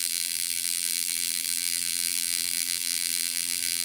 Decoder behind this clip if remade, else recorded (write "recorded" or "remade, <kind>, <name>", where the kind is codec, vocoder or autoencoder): remade, vocoder, BigVGAN v2